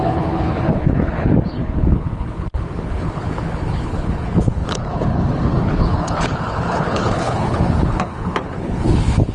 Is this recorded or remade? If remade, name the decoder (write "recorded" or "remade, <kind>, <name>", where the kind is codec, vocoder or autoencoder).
remade, codec, HILCodec